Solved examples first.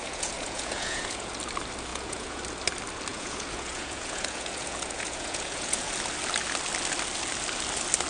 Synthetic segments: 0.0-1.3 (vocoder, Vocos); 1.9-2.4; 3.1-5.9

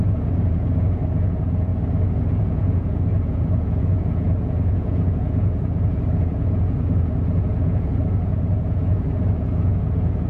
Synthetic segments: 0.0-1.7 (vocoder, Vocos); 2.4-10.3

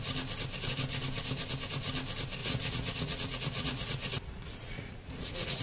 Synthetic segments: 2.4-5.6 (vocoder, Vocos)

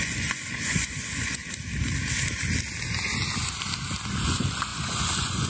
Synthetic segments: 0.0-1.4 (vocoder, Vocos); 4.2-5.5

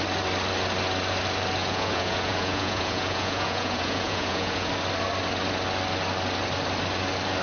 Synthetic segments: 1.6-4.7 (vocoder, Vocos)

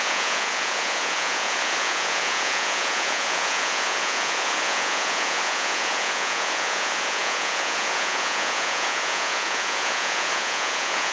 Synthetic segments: 0.0-11.1 (vocoder, Vocos)